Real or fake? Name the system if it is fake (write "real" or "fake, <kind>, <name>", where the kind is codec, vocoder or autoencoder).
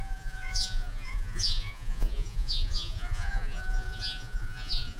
fake, vocoder, Vocos